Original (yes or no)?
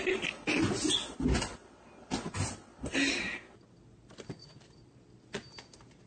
yes